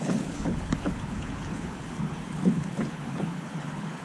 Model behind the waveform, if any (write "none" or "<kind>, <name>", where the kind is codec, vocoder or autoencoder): codec, HILCodec